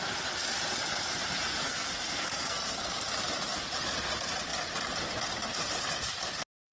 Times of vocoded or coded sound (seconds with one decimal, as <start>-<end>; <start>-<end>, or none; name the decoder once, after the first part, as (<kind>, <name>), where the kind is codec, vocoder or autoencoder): 1.5-3.1 (codec, SNAC)